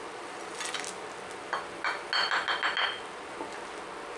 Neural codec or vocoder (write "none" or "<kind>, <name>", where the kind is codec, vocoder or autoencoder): none